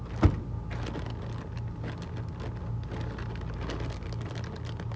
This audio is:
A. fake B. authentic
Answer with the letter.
B